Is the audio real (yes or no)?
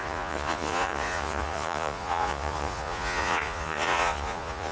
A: no